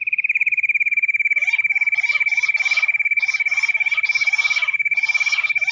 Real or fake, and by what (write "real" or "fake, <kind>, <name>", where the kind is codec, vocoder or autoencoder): real